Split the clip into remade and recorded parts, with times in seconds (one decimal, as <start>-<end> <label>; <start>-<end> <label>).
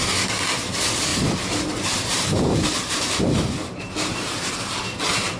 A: 0.0-1.1 recorded; 1.1-3.2 remade; 3.2-3.6 recorded; 3.6-4.8 remade; 4.8-5.4 recorded